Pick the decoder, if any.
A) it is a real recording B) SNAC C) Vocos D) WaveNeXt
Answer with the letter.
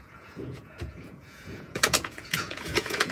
C